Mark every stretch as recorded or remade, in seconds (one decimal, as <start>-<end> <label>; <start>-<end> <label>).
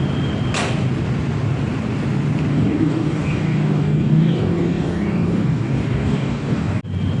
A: 0.0-2.5 recorded; 2.5-6.8 remade; 6.8-7.2 recorded